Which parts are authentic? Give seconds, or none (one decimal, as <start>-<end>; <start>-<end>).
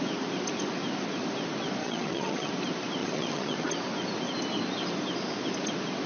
0.0-1.8; 2.5-3.0; 3.7-6.1